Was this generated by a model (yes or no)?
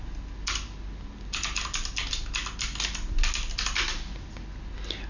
no